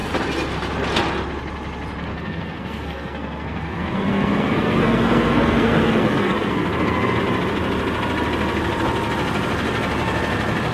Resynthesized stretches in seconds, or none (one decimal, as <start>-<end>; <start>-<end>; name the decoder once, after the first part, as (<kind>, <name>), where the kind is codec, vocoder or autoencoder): 2.1-7.2 (codec, SNAC)